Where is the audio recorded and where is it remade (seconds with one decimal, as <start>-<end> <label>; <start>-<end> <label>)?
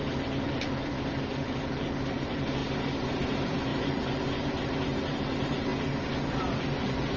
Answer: 0.0-2.6 remade; 2.6-3.1 recorded; 3.1-5.7 remade; 5.7-6.4 recorded; 6.4-7.2 remade